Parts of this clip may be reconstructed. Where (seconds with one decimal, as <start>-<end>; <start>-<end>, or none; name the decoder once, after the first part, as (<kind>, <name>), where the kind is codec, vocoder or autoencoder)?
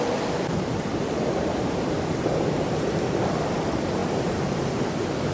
0.0-5.3 (vocoder, BigVGAN v2)